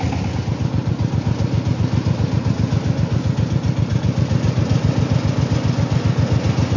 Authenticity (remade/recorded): recorded